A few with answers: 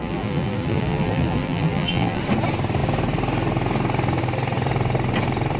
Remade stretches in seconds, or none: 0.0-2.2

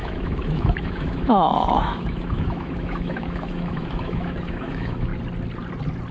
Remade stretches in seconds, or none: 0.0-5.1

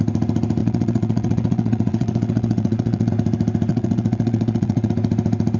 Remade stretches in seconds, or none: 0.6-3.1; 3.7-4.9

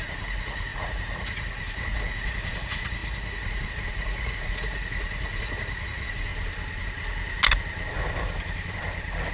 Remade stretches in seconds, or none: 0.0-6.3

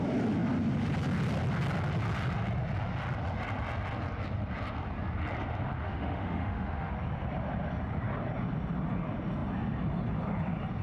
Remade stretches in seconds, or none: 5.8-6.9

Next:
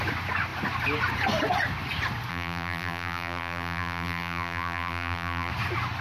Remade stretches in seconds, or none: 2.3-5.5

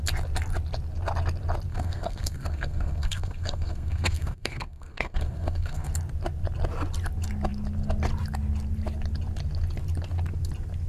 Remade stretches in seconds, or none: 1.7-5.9